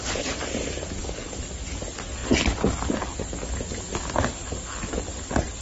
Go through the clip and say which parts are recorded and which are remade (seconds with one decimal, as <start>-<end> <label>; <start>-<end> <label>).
0.0-5.6 recorded